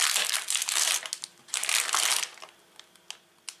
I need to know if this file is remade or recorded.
recorded